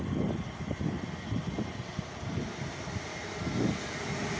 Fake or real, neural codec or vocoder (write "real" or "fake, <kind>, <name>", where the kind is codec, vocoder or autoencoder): real